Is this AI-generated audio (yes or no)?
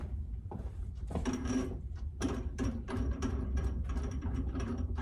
yes